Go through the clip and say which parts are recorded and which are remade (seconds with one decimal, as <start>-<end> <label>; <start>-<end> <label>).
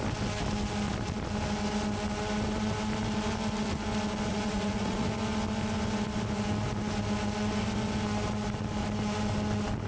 0.0-4.3 recorded; 4.3-5.1 remade; 5.1-9.9 recorded